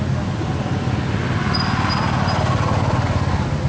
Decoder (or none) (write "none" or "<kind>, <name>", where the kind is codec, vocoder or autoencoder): none